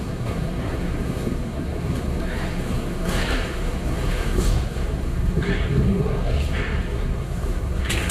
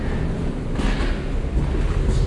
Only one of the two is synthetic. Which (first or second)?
first